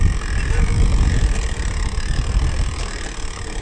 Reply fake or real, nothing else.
real